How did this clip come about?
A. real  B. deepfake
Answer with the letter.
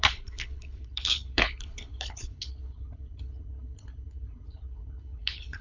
B